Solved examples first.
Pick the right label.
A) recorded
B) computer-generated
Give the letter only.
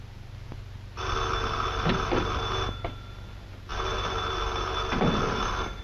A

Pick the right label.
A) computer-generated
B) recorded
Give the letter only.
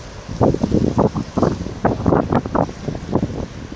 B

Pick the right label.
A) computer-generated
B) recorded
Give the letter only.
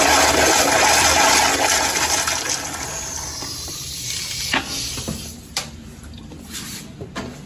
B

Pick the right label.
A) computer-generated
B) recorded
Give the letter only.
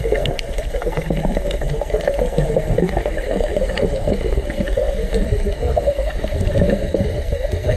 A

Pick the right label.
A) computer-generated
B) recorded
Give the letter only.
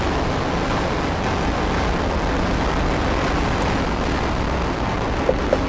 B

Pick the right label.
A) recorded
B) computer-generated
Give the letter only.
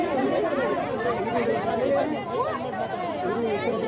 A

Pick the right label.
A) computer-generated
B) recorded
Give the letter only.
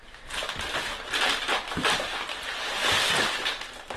B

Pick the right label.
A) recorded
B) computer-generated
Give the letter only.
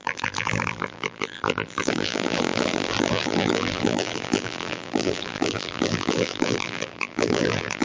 B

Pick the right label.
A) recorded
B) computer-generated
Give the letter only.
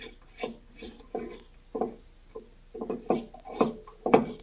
A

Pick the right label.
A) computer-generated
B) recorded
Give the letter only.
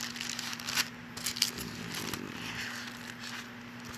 B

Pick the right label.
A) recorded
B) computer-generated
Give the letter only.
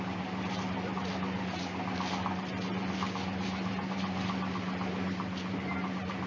A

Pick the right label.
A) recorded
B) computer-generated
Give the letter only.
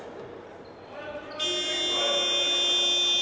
A